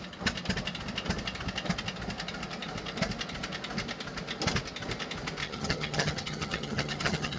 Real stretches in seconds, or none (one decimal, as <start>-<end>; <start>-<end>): 0.0-5.4